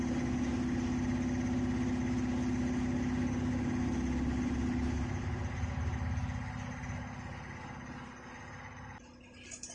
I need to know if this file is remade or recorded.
recorded